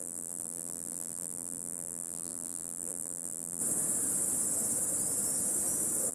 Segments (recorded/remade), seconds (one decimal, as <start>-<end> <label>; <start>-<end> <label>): 0.0-3.6 remade; 3.6-6.1 recorded